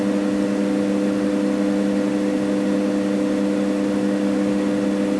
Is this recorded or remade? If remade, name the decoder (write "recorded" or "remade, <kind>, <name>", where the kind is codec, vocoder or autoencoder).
recorded